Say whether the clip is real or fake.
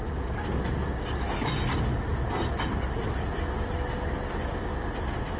real